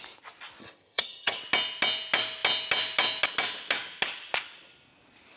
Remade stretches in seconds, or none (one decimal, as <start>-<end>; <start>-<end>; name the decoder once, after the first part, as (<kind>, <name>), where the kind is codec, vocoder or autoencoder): 0.6-1.4 (vocoder, HiFi-GAN)